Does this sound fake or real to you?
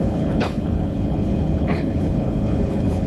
fake